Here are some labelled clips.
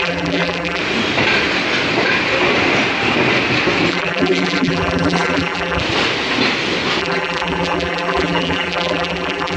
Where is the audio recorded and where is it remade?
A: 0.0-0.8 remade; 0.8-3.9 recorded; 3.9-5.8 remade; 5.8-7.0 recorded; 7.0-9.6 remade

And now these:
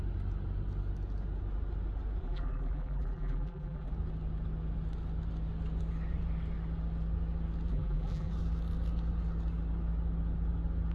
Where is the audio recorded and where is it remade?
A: 0.0-2.2 recorded; 2.2-3.9 remade; 3.9-7.7 recorded; 7.7-8.3 remade; 8.3-10.9 recorded

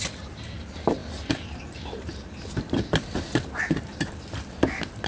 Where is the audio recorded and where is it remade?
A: 0.0-5.1 recorded